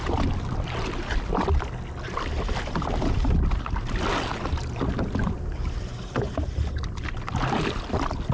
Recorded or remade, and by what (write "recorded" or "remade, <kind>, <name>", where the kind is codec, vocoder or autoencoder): recorded